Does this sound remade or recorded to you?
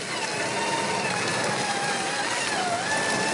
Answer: recorded